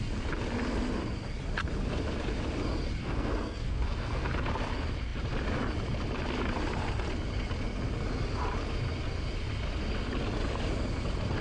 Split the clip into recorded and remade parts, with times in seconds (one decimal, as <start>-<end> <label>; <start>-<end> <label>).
0.0-3.0 recorded; 3.0-4.3 remade; 4.3-11.4 recorded